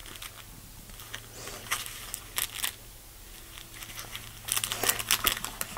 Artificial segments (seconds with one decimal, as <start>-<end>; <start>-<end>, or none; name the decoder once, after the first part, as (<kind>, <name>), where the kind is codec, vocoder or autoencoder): none